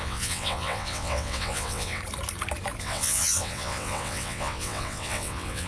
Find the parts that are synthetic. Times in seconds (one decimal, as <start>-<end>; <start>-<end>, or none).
0.0-2.0; 2.8-5.7